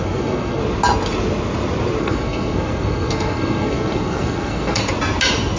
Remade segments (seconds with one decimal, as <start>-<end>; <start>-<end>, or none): 0.0-0.6; 2.0-4.8